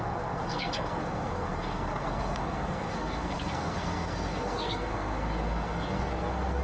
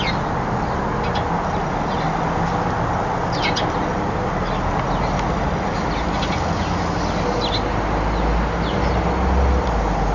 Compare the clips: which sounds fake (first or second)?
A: first